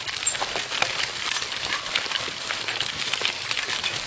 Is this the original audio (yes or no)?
yes